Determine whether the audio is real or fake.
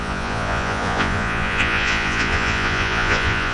fake